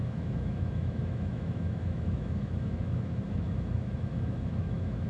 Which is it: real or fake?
fake